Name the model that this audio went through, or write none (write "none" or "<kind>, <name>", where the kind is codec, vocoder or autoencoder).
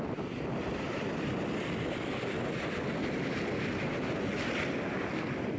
none